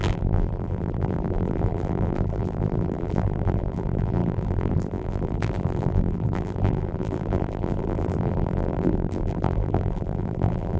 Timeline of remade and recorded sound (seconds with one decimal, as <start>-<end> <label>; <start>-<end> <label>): 0.0-10.8 remade